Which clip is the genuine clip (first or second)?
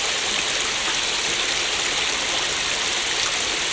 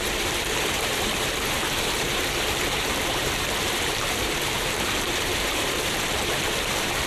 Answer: first